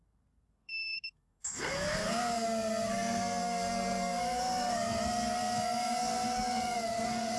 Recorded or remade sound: remade